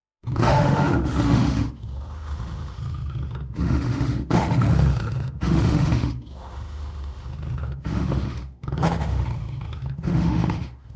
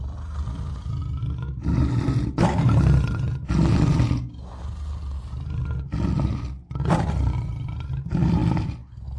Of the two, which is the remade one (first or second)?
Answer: first